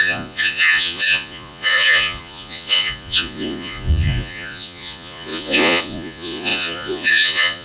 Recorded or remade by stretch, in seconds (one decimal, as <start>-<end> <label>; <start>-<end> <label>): 0.0-7.6 remade